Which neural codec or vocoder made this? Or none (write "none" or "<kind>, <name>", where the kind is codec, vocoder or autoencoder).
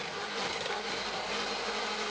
none